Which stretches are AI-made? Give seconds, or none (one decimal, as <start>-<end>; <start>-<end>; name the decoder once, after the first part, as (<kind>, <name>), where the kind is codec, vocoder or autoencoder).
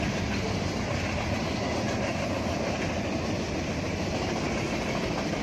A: none